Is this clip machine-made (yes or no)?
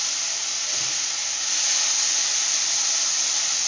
no